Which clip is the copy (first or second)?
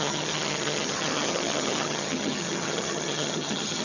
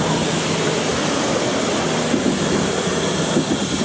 first